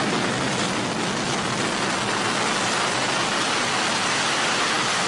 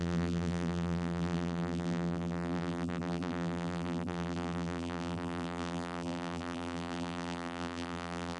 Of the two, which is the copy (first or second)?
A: second